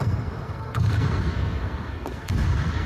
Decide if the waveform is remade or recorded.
remade